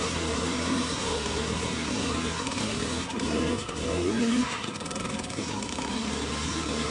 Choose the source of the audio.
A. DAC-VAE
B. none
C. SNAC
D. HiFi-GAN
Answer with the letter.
C